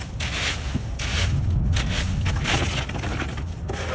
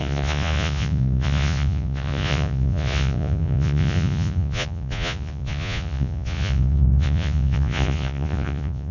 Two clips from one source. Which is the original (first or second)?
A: first